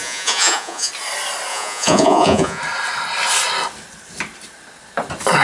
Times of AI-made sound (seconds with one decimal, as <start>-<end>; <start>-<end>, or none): 0.0-0.9; 1.5-2.6